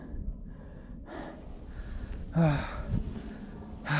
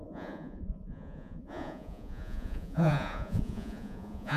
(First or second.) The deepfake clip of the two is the second